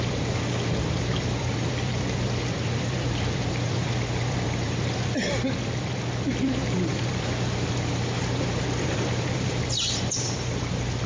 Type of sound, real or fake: fake